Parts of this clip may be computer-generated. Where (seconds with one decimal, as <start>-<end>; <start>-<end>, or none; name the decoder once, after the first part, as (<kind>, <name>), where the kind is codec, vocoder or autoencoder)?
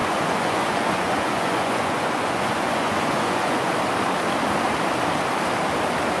0.0-3.7 (vocoder, Vocos)